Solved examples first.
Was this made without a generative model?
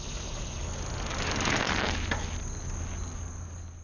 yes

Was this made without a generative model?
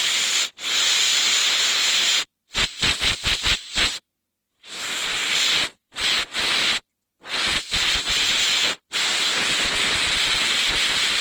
yes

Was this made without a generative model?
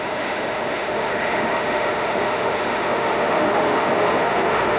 no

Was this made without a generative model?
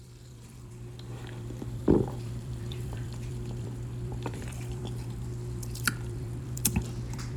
no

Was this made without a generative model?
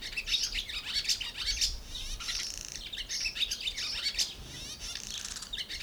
yes